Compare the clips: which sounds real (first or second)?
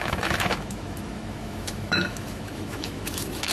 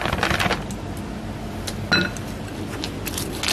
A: second